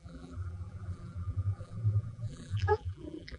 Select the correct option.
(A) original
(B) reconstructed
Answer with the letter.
B